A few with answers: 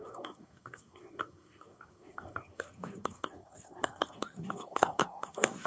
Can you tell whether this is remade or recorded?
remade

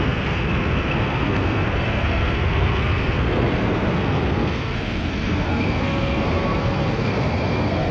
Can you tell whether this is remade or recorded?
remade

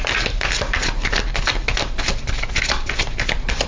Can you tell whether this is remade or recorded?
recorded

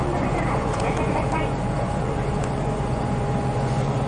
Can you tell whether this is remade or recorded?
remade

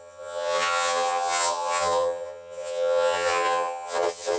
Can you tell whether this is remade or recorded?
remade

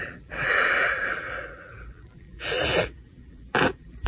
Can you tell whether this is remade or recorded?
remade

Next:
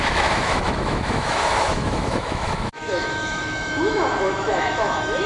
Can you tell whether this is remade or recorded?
remade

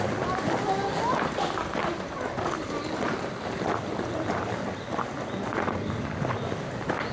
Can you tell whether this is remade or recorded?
remade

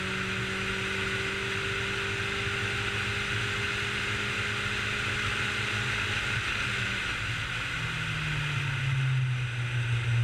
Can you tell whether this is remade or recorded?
recorded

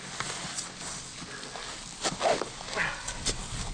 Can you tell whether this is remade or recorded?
recorded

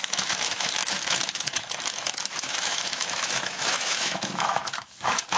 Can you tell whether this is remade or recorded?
remade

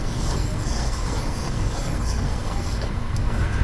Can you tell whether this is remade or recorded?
remade